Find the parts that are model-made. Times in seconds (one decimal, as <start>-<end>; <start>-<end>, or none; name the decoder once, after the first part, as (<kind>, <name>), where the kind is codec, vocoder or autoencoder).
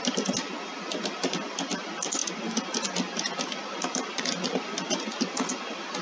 none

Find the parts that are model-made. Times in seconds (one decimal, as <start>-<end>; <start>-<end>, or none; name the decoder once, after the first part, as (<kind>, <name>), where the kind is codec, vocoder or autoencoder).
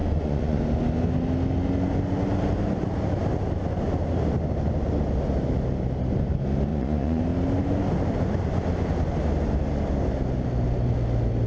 0.0-0.6 (vocoder, Vocos); 6.7-7.2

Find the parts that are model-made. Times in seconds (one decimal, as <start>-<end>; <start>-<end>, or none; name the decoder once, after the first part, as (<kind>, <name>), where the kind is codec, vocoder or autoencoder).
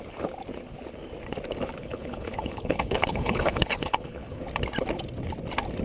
1.8-4.4 (codec, HILCodec)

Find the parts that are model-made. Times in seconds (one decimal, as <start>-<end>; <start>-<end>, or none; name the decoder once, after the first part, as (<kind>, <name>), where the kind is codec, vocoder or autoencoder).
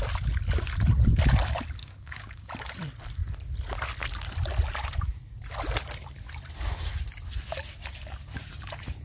1.8-2.5 (codec, DAC)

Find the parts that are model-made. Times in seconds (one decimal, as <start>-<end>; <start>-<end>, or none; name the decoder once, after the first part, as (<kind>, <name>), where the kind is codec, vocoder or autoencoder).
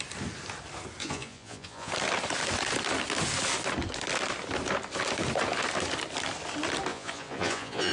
1.0-1.9 (vocoder, Vocos); 6.9-7.9